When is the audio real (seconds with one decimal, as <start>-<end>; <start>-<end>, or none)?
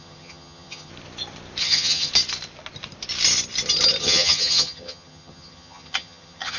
0.9-1.6; 2.1-4.0